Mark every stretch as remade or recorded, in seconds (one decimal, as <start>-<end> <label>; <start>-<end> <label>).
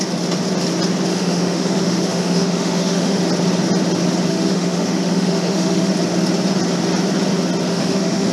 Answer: 0.0-1.1 recorded; 1.1-3.2 remade; 3.2-4.3 recorded; 4.3-5.9 remade; 5.9-7.7 recorded; 7.7-8.3 remade